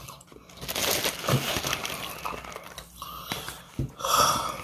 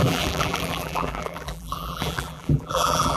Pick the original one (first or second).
first